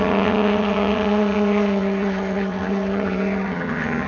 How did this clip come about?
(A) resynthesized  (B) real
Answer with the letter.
A